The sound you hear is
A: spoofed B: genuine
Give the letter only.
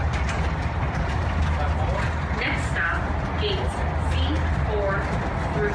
B